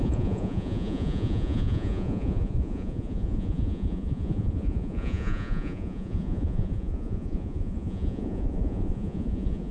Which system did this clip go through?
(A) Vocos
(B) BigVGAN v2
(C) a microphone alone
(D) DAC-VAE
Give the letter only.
A